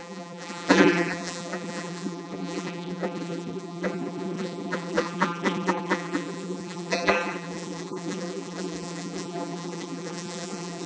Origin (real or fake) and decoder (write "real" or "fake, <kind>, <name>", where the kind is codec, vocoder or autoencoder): fake, vocoder, BigVGAN v2